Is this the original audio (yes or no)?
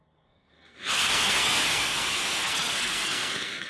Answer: no